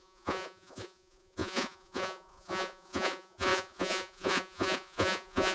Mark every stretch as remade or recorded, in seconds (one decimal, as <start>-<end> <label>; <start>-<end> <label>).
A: 0.0-5.5 remade